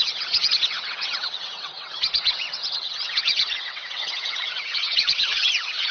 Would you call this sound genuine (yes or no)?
no